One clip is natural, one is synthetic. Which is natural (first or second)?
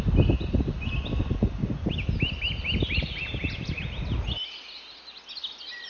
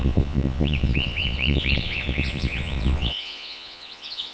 first